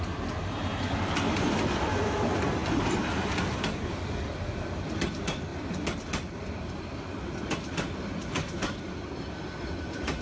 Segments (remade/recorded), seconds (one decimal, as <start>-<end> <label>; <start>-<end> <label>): 0.0-10.2 recorded